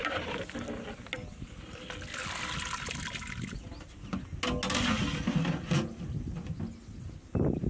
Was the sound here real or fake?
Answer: real